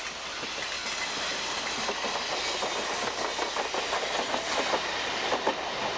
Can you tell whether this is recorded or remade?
recorded